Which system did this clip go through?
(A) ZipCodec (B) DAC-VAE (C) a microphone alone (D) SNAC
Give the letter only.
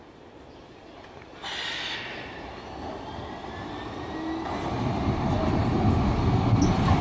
C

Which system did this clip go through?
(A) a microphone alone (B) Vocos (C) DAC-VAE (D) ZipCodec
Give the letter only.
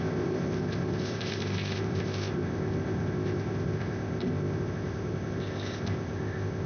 D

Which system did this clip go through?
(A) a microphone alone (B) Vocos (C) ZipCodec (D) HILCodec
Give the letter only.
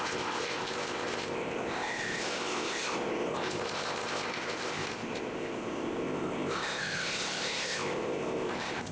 C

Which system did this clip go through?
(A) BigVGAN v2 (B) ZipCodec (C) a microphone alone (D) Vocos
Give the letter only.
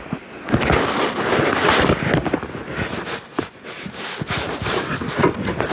C